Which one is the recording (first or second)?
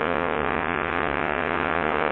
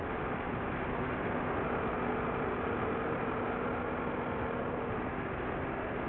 second